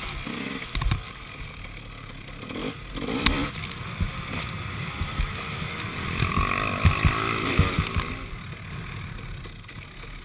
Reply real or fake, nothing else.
real